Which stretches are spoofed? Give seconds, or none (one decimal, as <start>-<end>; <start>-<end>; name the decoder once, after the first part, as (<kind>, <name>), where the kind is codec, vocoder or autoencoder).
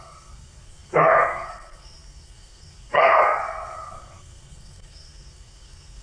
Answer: 0.0-6.0 (codec, SNAC)